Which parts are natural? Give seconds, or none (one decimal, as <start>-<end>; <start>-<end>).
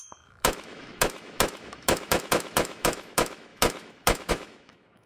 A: none